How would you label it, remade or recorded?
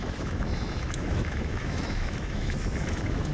remade